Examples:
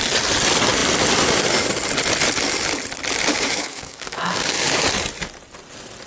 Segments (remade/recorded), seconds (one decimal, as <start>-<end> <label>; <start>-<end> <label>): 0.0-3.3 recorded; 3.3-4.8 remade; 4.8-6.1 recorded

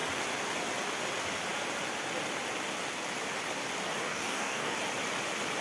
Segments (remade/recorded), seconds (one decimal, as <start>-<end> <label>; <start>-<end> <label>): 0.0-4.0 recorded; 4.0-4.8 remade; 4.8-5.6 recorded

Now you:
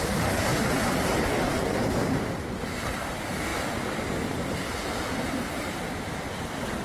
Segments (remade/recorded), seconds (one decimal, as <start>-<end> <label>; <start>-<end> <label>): 0.0-6.8 recorded

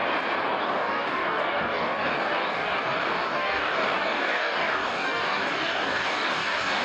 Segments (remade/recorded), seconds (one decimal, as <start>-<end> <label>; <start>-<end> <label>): 0.0-0.6 recorded; 0.6-6.8 remade

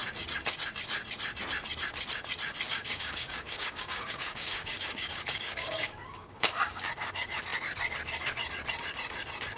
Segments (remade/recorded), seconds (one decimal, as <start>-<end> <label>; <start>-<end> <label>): 0.0-2.7 recorded; 2.7-6.9 remade; 6.9-9.6 recorded

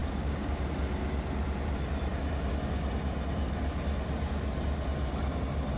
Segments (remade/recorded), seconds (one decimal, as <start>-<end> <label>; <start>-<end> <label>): 0.0-0.7 remade; 0.7-5.8 recorded